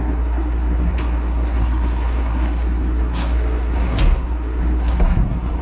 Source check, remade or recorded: remade